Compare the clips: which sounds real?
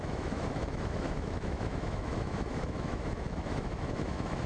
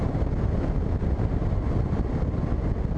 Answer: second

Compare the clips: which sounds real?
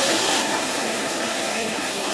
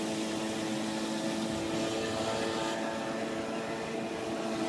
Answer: second